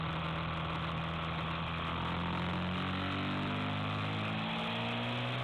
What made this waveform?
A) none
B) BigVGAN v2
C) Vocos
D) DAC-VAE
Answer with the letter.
A